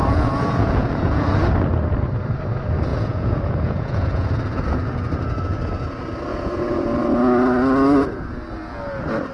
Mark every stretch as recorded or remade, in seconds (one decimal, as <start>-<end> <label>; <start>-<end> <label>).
0.0-1.4 remade; 1.4-2.9 recorded; 2.9-4.9 remade; 4.9-6.3 recorded; 6.3-6.8 remade; 6.8-9.3 recorded